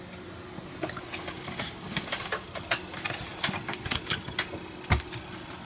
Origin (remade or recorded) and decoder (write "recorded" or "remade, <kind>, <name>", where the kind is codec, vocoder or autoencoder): recorded